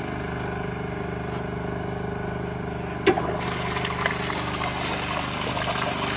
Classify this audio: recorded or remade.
recorded